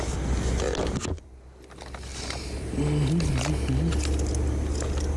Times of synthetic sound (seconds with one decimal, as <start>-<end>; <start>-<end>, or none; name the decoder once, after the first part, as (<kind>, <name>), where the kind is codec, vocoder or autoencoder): none